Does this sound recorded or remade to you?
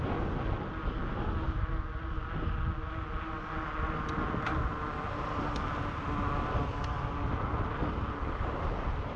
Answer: recorded